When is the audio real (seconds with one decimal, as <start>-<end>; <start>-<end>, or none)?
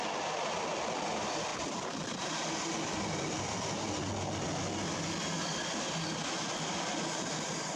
0.0-7.8